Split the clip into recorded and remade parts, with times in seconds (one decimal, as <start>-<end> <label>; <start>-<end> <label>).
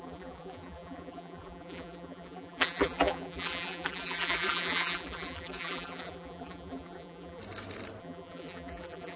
0.0-7.4 remade; 7.4-8.0 recorded; 8.0-9.2 remade